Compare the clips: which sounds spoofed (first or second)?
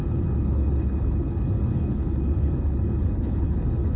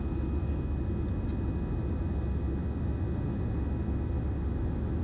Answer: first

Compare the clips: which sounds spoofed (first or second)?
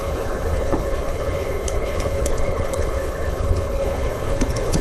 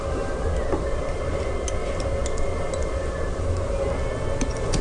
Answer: first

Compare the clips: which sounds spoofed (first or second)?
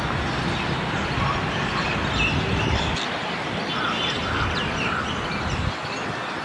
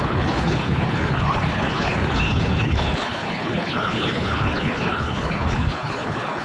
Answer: second